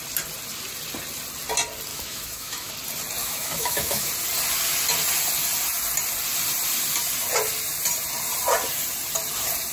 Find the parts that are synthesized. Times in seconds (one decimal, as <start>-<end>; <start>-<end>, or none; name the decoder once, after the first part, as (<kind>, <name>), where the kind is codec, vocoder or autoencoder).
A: 1.9-2.7 (autoencoder, DAC-VAE); 3.2-4.1